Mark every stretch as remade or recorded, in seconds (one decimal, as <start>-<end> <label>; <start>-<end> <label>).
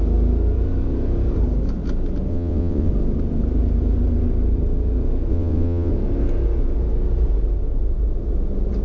0.0-2.3 recorded; 2.3-2.9 remade; 2.9-5.3 recorded; 5.3-5.9 remade; 5.9-8.8 recorded